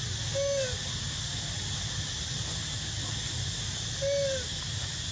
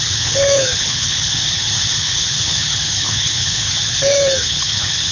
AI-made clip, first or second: second